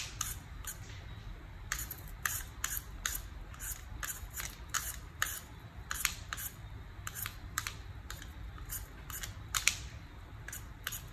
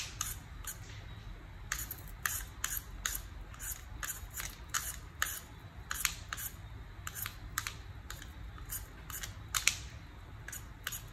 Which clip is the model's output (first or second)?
first